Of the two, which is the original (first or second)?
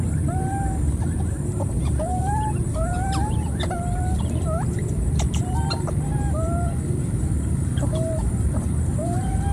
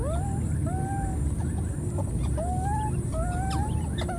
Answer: second